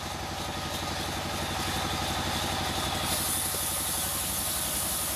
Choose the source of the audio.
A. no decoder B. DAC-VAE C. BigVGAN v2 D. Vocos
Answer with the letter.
A